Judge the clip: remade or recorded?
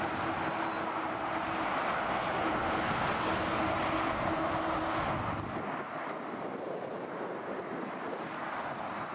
recorded